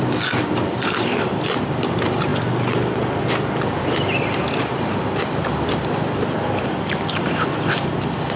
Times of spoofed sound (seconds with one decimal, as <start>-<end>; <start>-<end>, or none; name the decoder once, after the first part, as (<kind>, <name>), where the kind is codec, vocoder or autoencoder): 0.0-2.3 (vocoder, BigVGAN v2); 3.8-8.4